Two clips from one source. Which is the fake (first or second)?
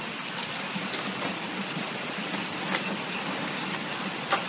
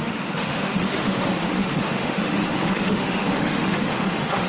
second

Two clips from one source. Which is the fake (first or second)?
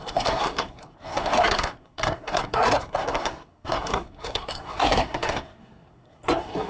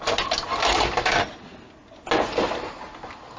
first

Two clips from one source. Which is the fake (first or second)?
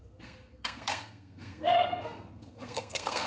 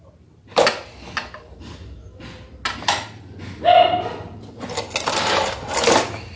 first